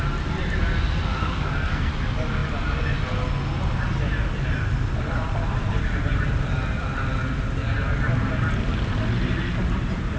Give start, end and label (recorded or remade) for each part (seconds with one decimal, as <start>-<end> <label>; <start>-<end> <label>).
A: 0.0-1.2 recorded; 1.2-1.9 remade; 1.9-10.2 recorded